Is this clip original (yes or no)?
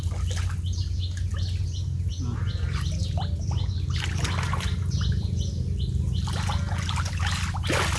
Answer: yes